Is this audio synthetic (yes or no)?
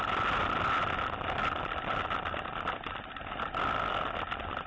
no